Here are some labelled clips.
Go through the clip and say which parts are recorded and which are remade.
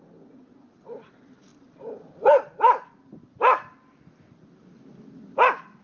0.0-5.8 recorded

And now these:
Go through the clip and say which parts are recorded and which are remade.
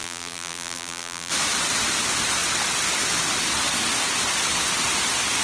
0.0-1.3 remade; 1.3-5.4 recorded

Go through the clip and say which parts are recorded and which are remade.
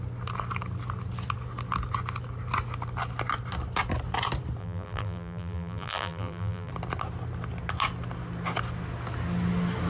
0.0-4.6 recorded; 4.6-6.7 remade; 6.7-9.9 recorded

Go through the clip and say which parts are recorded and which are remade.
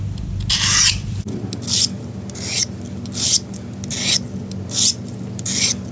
0.0-5.9 recorded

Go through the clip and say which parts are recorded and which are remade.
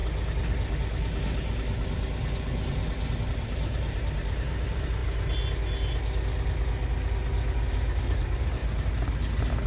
0.0-3.3 recorded; 3.3-5.0 remade; 5.0-7.7 recorded; 7.7-8.6 remade; 8.6-9.7 recorded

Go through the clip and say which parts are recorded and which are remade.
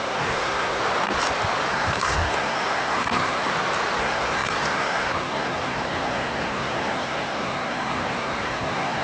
0.0-0.8 remade; 0.8-1.7 recorded; 1.7-3.5 remade; 3.5-4.0 recorded; 4.0-9.0 remade